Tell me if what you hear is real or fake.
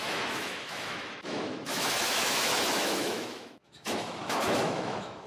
fake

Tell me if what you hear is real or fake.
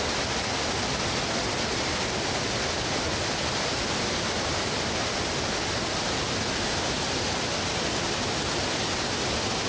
real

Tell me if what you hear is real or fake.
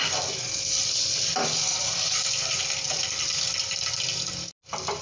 real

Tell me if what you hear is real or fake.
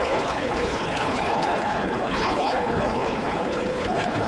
fake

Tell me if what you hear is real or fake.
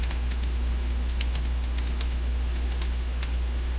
fake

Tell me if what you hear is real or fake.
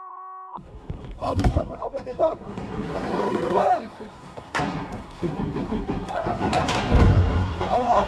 fake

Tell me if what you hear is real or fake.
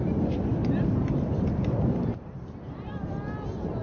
real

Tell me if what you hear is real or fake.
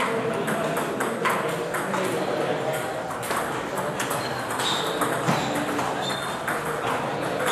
real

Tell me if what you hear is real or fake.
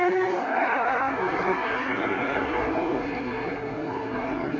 fake